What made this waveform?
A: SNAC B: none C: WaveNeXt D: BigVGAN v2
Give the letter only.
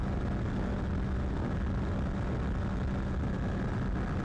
B